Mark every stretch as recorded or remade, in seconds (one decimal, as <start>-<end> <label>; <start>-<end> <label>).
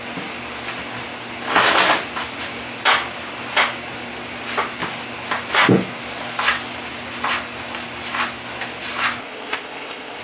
0.0-9.2 recorded; 9.2-10.2 remade